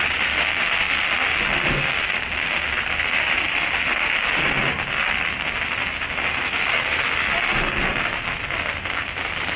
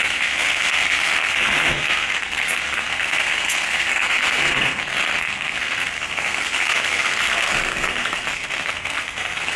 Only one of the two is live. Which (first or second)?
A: first